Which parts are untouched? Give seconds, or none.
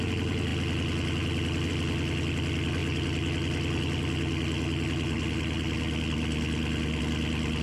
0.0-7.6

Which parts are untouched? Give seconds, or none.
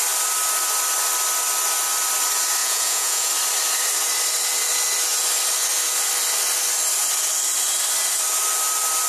0.0-2.6; 3.3-9.1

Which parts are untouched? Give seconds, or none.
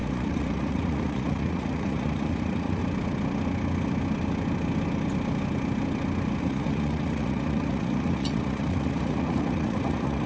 2.8-6.4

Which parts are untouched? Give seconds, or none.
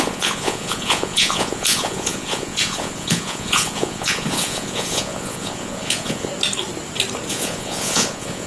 6.3-7.3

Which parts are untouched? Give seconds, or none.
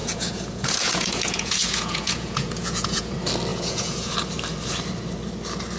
3.1-3.5; 4.1-5.8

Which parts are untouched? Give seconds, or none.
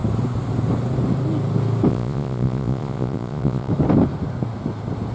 0.0-1.9; 3.7-5.1